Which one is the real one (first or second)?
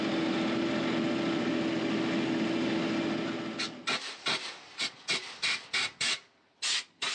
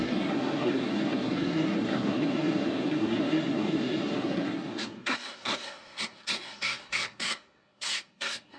first